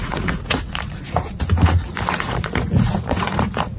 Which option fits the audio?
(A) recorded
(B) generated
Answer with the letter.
B